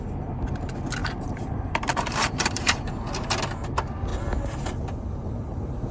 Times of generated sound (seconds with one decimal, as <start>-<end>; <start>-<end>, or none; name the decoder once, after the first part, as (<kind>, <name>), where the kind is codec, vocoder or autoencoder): 1.0-2.9 (vocoder, BigVGAN v2); 4.1-5.9